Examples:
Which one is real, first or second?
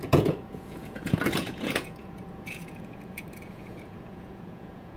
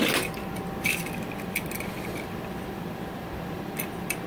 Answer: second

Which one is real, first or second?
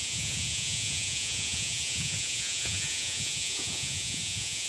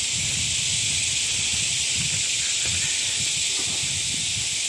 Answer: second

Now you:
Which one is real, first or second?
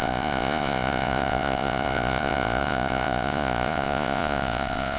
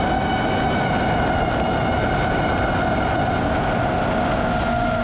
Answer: second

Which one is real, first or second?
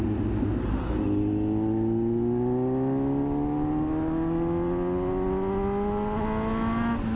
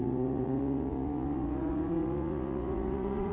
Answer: first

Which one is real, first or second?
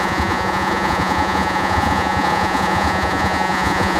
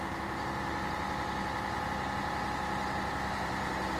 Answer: second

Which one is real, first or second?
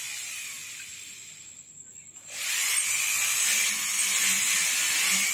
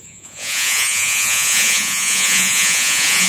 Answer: first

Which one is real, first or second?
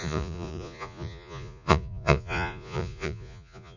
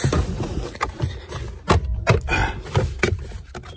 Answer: second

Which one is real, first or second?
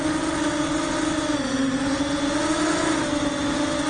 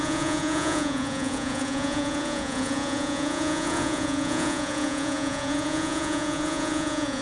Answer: first